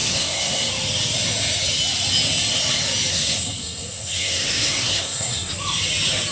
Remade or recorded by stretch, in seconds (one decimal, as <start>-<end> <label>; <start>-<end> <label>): 0.0-0.7 remade; 0.7-3.1 recorded; 3.1-5.5 remade; 5.5-6.3 recorded